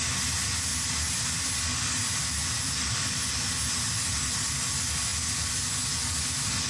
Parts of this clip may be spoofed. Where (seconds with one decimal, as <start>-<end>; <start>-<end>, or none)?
none